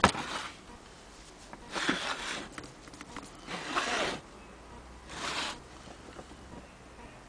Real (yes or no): yes